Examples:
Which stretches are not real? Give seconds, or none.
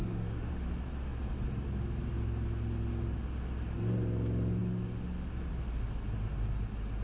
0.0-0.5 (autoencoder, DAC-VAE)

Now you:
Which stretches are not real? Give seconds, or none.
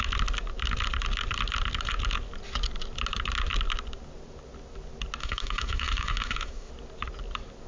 5.2-6.7 (autoencoder, DAC-VAE)